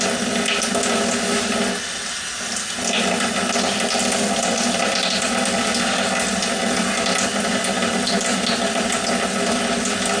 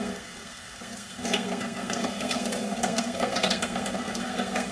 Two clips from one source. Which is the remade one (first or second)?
second